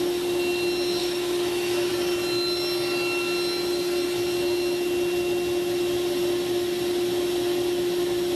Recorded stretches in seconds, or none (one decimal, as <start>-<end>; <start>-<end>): 0.0-1.0; 1.9-8.4

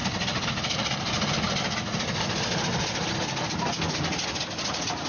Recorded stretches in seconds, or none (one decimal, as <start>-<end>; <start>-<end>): 0.0-5.1

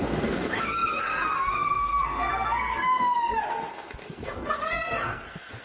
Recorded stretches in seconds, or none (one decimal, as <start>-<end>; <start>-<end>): none

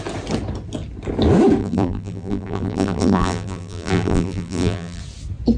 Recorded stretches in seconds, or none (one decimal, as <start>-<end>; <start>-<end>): 0.0-1.6; 5.0-5.6